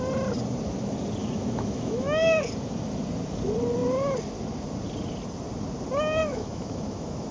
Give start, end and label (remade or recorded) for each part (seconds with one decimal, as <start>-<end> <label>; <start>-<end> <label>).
0.0-1.2 recorded; 1.2-2.4 remade; 2.4-6.2 recorded; 6.2-7.3 remade